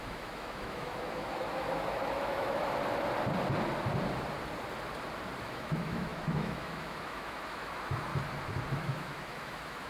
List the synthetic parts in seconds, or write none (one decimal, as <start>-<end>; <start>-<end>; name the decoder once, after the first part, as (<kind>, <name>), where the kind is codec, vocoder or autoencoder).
0.0-2.6 (autoencoder, DAC-VAE); 5.4-8.1; 8.7-9.9